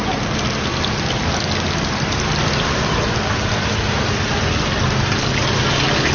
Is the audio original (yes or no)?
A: yes